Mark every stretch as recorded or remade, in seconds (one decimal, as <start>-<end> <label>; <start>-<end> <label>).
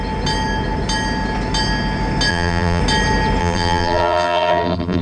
0.0-2.3 recorded; 2.3-2.8 remade; 2.8-3.4 recorded; 3.4-5.0 remade